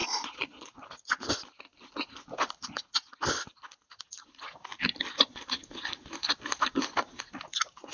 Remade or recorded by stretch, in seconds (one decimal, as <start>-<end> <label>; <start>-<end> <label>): 0.0-1.3 remade; 1.3-7.9 recorded